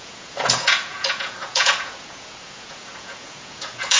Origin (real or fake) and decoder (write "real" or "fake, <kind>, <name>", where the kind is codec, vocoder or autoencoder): fake, vocoder, Vocos